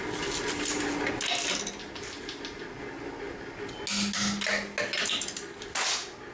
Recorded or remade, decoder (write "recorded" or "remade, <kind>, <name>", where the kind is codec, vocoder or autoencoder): recorded